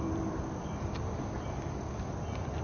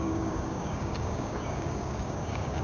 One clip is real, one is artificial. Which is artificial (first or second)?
second